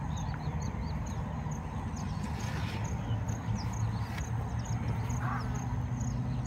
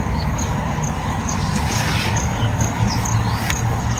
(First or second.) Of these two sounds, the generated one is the second